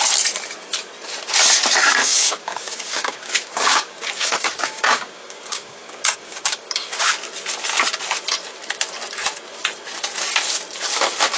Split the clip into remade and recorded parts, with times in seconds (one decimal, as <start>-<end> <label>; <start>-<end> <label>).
0.0-2.0 recorded; 2.0-7.1 remade; 7.1-11.4 recorded